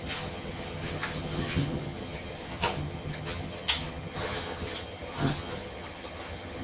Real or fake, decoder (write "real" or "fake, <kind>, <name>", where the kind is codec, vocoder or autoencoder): fake, vocoder, HiFi-GAN